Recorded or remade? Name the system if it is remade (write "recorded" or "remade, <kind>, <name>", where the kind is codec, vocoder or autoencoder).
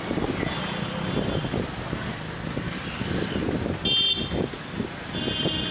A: recorded